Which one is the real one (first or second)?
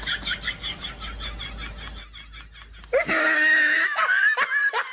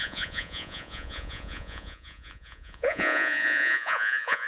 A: first